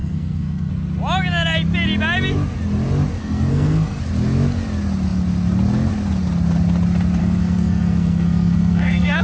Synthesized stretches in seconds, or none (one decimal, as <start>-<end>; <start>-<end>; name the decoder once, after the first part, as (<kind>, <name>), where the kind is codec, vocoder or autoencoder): 0.0-0.7 (codec, SNAC); 3.2-4.0; 7.2-9.2

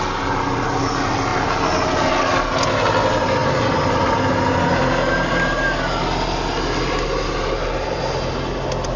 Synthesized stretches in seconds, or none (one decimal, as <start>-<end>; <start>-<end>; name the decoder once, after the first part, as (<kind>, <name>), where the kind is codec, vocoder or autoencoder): none

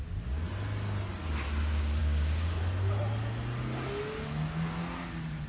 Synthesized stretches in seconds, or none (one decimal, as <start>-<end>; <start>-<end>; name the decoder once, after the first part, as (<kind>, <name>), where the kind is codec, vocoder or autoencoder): 2.0-2.6 (codec, DAC)

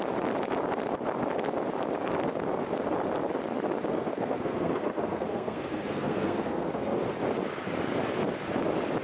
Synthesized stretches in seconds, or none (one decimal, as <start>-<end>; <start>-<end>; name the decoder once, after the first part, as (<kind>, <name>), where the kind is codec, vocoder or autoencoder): 3.9-7.0 (codec, SNAC)

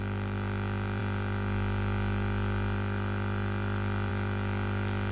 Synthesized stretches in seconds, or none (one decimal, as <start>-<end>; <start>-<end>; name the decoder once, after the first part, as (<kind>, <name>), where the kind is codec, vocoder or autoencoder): none

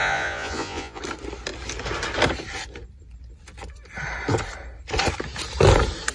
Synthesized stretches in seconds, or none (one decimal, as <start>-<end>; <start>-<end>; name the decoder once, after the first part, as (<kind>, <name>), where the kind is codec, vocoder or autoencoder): 0.0-1.0 (vocoder, Vocos)

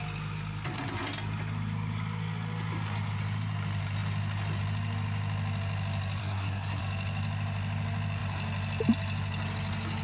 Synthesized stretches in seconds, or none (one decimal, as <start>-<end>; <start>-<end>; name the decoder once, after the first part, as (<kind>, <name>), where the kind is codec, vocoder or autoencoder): 6.2-6.8 (codec, SNAC)